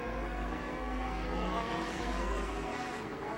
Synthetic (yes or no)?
yes